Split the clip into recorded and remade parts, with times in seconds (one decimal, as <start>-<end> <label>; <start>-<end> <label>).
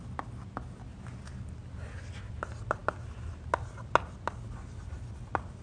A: 0.0-5.6 recorded